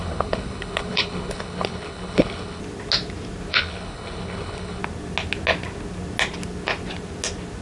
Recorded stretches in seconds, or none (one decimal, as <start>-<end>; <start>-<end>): 2.6-3.5; 4.8-7.6